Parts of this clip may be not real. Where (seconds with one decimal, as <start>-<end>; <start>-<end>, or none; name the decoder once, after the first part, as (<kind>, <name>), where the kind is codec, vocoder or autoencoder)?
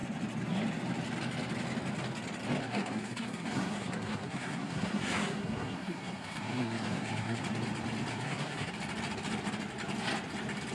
2.6-7.4 (codec, SNAC); 8.1-8.7